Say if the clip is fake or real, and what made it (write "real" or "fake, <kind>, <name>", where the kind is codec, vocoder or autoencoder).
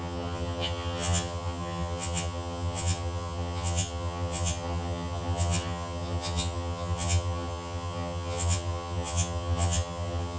fake, vocoder, HiFi-GAN